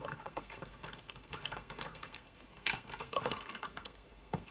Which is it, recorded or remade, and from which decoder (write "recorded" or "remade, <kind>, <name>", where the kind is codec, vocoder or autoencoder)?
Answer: remade, codec, SNAC